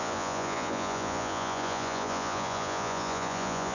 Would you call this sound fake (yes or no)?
yes